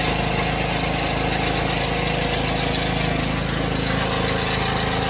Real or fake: real